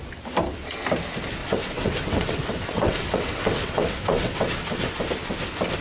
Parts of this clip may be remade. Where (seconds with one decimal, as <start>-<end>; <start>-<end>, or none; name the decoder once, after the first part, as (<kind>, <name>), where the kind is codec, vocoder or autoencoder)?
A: 1.4-4.9 (vocoder, WaveNeXt)